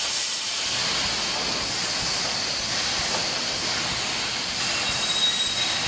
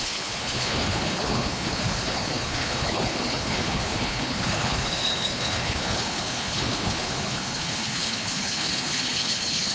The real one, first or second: first